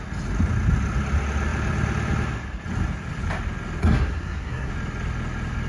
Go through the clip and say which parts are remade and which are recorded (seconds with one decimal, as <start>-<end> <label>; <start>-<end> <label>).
0.0-3.8 recorded; 3.8-4.7 remade; 4.7-5.7 recorded